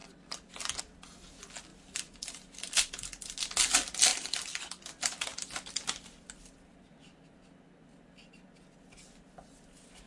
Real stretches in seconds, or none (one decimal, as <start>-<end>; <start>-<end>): 0.0-1.7; 2.9-4.1; 4.8-10.1